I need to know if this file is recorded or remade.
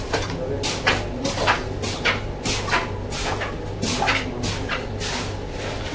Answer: recorded